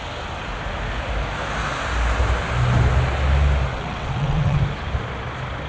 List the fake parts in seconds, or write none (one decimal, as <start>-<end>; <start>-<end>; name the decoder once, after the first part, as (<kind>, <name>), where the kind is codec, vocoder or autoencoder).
3.7-4.6 (vocoder, WaveNeXt)